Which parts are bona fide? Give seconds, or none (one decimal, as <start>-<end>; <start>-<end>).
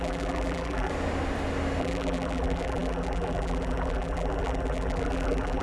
0.9-1.8